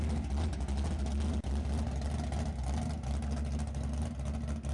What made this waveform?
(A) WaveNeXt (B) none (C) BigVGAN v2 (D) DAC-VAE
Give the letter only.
B